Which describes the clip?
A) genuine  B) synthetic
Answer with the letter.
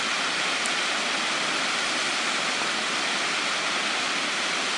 A